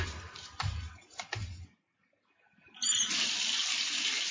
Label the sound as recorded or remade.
recorded